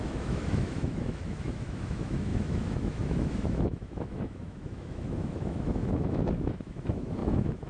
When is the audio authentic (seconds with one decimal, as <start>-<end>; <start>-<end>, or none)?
none